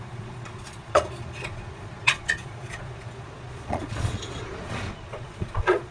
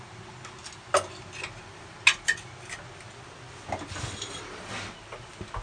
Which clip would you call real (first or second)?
second